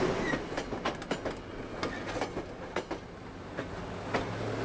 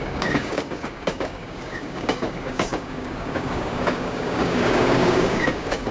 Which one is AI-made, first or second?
second